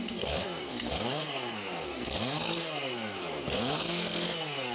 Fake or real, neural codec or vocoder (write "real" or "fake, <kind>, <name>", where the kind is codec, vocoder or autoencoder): fake, codec, SNAC